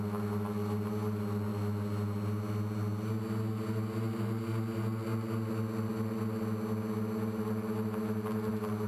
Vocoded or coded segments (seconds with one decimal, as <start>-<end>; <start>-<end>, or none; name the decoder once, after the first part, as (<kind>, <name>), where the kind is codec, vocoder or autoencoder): none